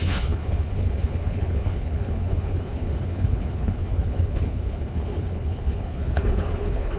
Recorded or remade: remade